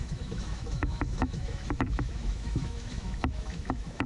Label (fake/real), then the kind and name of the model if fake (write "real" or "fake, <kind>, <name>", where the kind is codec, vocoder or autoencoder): fake, autoencoder, DAC-VAE